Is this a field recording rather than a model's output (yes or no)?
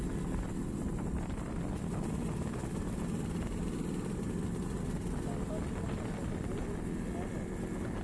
yes